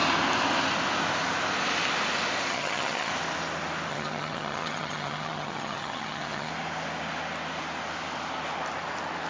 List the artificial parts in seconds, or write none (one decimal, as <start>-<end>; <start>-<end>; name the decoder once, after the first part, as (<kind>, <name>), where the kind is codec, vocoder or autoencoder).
2.5-3.1 (vocoder, HiFi-GAN); 3.9-6.5